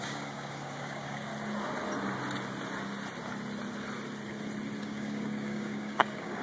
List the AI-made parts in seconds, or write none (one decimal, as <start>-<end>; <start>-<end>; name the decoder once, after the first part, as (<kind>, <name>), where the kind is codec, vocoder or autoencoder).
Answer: 0.0-1.3 (codec, DAC); 4.8-6.4